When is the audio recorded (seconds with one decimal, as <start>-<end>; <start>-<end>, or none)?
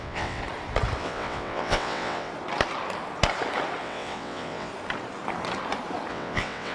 0.4-1.0; 2.3-3.8; 4.7-6.1